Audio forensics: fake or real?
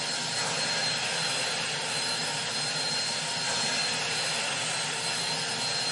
real